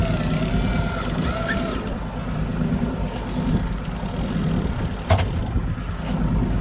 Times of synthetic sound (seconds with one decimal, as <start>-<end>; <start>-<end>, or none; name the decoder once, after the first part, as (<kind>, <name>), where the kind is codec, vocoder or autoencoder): none